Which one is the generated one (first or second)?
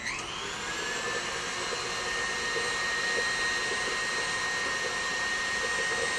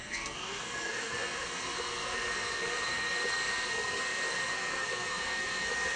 second